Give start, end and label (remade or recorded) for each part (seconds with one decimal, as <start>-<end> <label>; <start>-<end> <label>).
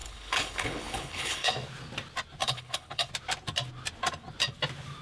0.0-1.5 remade; 1.5-2.4 recorded; 2.4-3.1 remade; 3.1-5.0 recorded